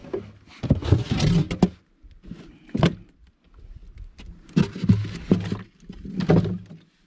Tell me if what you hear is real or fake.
real